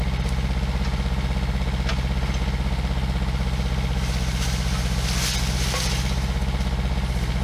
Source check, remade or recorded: recorded